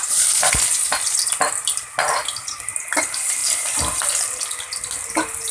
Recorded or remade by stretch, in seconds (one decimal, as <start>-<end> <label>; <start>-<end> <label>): 0.0-5.5 recorded